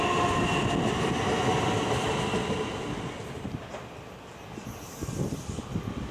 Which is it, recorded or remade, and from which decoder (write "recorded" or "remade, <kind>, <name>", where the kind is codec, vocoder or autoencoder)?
recorded